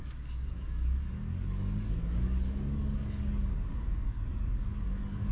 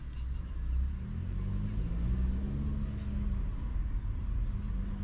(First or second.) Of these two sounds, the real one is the second